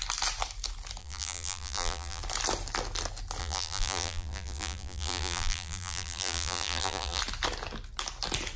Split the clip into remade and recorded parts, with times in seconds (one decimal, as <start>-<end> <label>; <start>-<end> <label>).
0.0-1.0 recorded; 1.0-2.2 remade; 2.2-3.4 recorded; 3.4-7.2 remade; 7.2-8.6 recorded